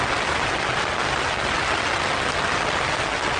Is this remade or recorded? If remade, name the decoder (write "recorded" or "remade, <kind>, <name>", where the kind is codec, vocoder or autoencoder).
recorded